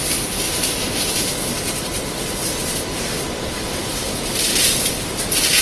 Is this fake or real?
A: real